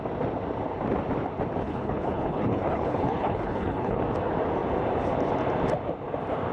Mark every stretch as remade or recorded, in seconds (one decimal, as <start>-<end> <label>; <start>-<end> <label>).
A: 0.0-1.6 recorded; 1.6-4.0 remade; 4.0-6.5 recorded